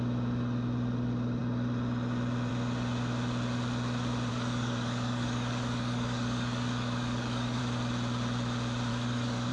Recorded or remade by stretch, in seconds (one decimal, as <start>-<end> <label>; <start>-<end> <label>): 0.0-4.3 recorded; 4.3-7.6 remade; 7.6-8.9 recorded; 8.9-9.5 remade